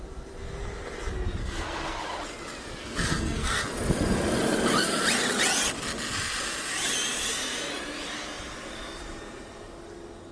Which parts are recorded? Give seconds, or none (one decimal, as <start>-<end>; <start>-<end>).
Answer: 0.0-1.4; 2.0-2.8; 3.6-10.3